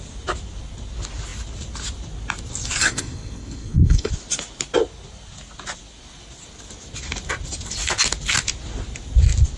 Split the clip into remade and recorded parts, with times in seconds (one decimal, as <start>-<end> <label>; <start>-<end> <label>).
0.0-2.8 recorded; 2.8-4.1 remade; 4.1-9.6 recorded